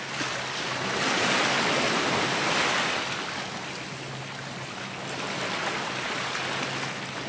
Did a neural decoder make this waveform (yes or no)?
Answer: no